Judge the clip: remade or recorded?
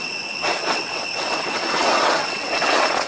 remade